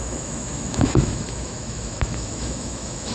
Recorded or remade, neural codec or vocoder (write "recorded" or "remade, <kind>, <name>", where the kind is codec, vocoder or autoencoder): remade, autoencoder, DAC-VAE